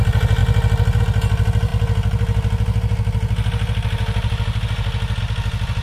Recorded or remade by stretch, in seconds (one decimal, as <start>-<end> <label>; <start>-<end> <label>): 0.0-5.8 recorded